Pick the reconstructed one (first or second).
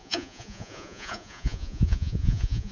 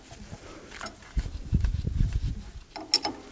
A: first